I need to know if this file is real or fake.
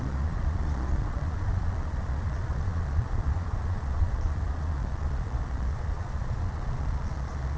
fake